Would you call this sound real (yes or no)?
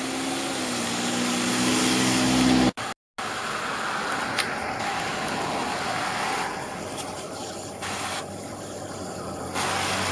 yes